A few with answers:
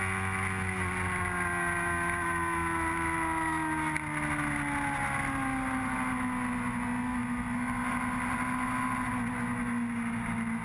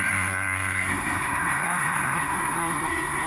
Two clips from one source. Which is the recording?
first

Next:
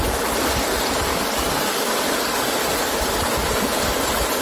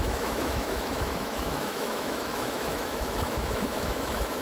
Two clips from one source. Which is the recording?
first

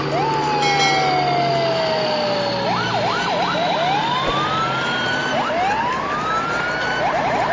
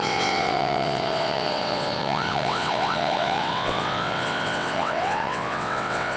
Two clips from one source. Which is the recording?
first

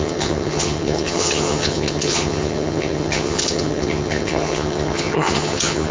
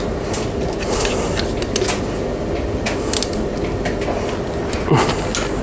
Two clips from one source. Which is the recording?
second